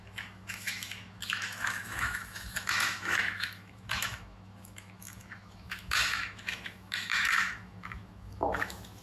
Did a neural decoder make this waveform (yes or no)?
yes